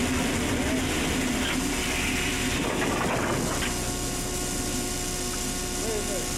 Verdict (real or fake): real